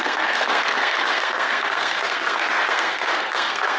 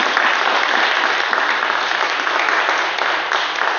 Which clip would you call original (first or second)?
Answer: second